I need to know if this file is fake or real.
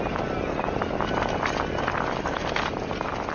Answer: real